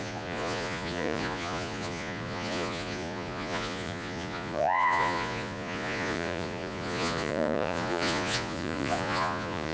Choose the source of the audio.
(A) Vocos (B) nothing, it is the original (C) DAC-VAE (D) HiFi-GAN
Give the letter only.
A